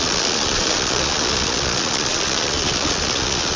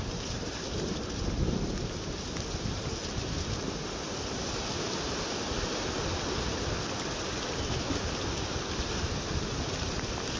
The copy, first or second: first